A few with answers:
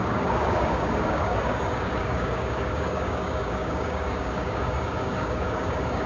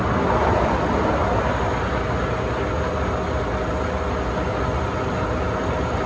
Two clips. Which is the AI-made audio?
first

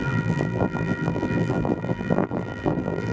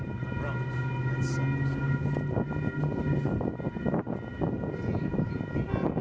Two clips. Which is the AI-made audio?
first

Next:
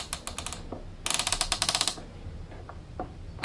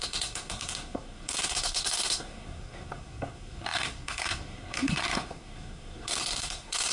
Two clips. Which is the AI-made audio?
second